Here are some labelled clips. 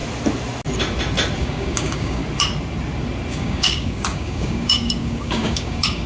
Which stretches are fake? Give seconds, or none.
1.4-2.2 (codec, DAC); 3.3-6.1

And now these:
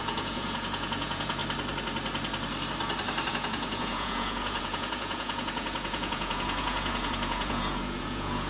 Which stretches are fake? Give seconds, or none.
0.0-1.4 (vocoder, Vocos); 3.3-8.5

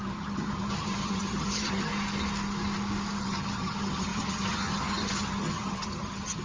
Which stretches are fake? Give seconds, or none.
0.0-1.9 (vocoder, HiFi-GAN); 3.2-6.4